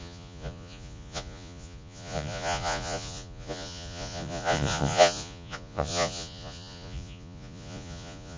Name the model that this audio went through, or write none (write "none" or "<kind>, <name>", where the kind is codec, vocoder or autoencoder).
vocoder, Vocos